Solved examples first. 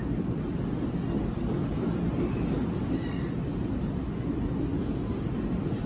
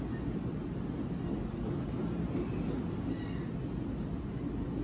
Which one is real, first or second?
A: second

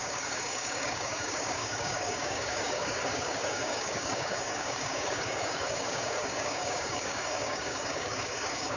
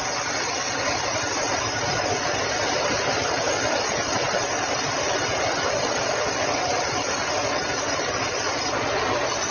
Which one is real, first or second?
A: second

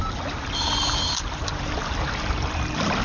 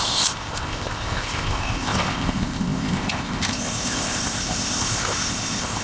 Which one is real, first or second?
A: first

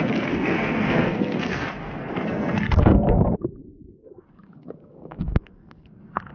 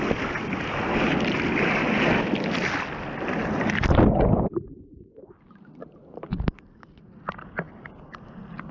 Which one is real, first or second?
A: second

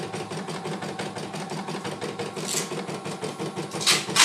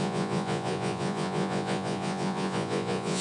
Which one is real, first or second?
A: first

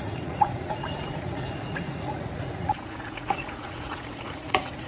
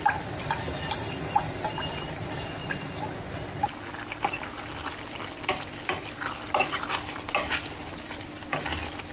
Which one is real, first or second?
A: second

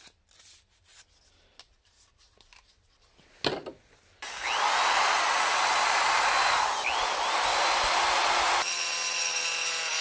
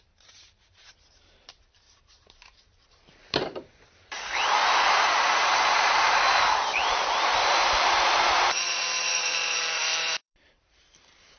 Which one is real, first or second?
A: first